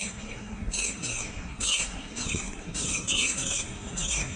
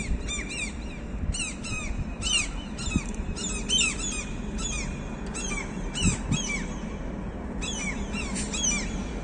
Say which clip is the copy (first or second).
first